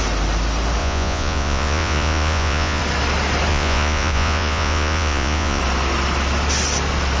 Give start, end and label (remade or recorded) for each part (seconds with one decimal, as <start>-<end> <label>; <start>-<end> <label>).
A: 0.0-0.8 recorded; 0.8-2.8 remade; 2.8-3.5 recorded; 3.5-5.6 remade; 5.6-7.2 recorded